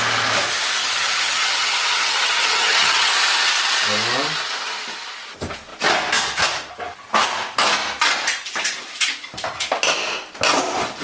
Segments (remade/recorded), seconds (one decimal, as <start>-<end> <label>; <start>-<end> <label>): 0.0-0.8 recorded; 0.8-3.1 remade; 3.1-11.0 recorded